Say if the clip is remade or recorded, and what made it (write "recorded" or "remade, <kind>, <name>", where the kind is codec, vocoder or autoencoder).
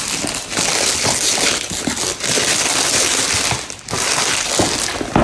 recorded